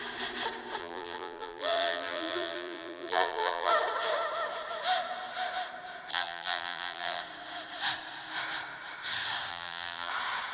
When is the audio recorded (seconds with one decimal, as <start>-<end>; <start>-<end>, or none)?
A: 0.0-0.8; 3.7-6.1; 7.2-9.5; 10.1-10.5